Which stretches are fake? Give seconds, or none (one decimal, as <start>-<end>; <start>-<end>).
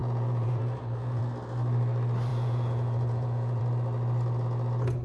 0.0-1.2; 2.3-3.6